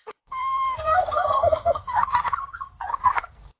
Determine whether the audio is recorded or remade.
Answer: remade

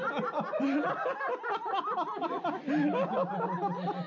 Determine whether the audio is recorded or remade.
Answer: recorded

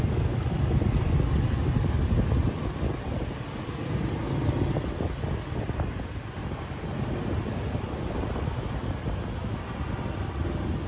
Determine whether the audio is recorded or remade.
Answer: recorded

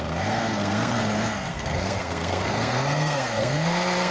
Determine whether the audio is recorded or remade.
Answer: remade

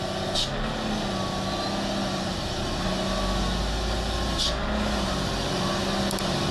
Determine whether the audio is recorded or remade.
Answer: recorded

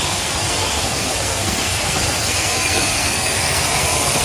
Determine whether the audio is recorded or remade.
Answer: remade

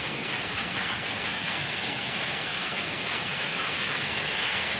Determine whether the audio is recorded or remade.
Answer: remade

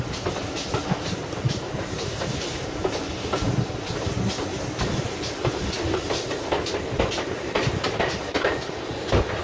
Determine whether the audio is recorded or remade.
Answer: recorded